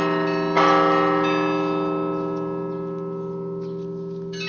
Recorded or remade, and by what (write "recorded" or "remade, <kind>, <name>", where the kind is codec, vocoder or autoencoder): recorded